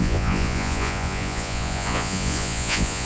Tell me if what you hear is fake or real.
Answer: fake